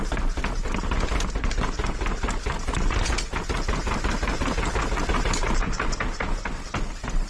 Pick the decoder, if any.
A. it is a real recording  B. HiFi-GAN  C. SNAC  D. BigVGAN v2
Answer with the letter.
A